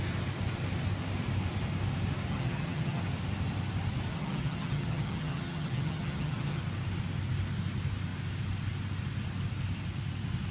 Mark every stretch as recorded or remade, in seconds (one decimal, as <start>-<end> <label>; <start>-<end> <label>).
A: 0.0-2.3 recorded; 2.3-3.0 remade; 3.0-4.2 recorded; 4.2-6.6 remade; 6.6-10.5 recorded